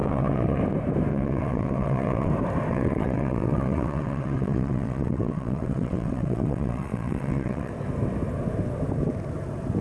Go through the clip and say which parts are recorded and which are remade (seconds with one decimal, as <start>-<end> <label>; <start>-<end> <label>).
0.0-0.6 remade; 0.6-1.1 recorded; 1.1-2.3 remade; 2.3-2.7 recorded; 2.7-7.7 remade; 7.7-9.8 recorded